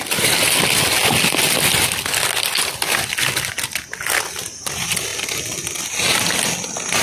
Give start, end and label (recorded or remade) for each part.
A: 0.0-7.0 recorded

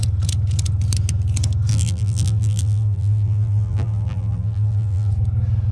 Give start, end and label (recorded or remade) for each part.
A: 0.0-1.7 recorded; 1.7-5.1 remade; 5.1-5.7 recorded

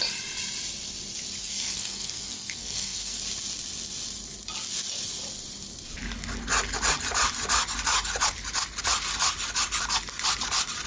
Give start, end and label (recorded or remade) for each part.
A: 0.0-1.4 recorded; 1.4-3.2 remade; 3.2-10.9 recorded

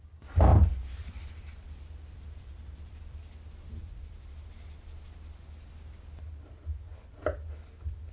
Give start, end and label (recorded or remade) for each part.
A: 0.0-0.5 recorded; 0.5-3.2 remade; 3.2-3.8 recorded; 3.8-4.3 remade; 4.3-8.1 recorded

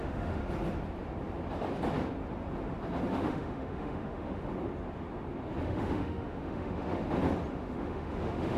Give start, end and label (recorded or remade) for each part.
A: 0.0-0.4 remade; 0.4-3.1 recorded; 3.1-4.5 remade; 4.5-5.6 recorded; 5.6-7.0 remade; 7.0-7.5 recorded; 7.5-8.6 remade

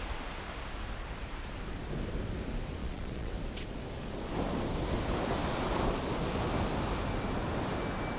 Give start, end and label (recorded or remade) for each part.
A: 0.0-2.8 recorded; 2.8-3.3 remade; 3.3-8.2 recorded

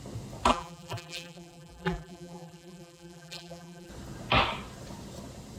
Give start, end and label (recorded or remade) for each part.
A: 0.0-0.5 recorded; 0.5-3.9 remade; 3.9-5.6 recorded